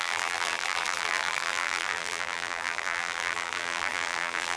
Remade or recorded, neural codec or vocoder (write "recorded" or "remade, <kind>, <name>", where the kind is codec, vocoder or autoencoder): remade, vocoder, BigVGAN v2